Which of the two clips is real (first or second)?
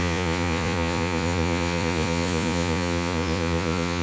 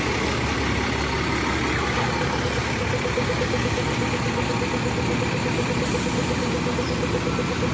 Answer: second